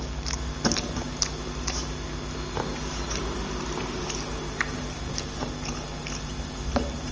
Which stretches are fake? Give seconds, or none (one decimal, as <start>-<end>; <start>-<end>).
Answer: 6.0-7.1